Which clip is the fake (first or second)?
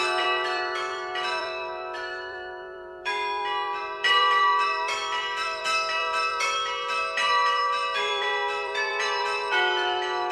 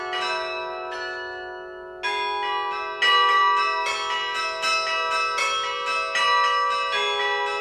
first